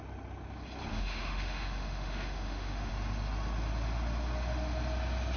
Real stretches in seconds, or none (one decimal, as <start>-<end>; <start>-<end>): 0.0-0.9; 2.9-5.4